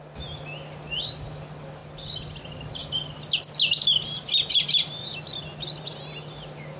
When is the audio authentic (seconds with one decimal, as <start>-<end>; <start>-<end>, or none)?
0.0-6.8